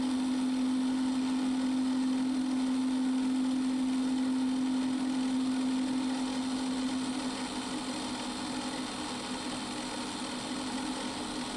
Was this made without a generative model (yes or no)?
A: yes